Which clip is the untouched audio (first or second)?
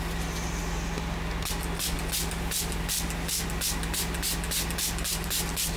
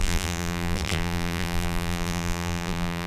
first